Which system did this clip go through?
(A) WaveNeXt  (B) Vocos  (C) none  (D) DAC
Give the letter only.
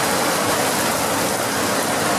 C